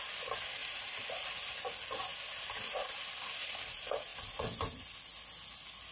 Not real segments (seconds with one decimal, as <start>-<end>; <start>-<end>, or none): 0.6-1.5